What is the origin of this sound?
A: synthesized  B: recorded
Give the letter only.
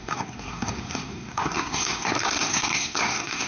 A